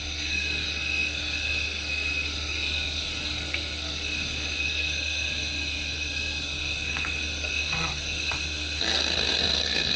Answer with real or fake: fake